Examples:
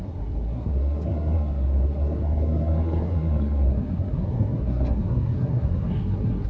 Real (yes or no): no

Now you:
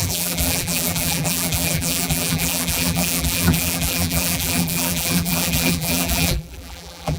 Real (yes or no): no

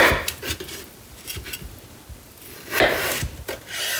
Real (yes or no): yes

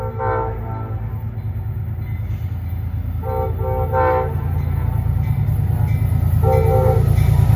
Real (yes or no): yes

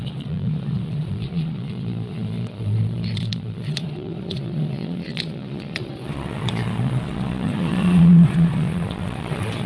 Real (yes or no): no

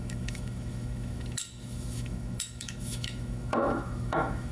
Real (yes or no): no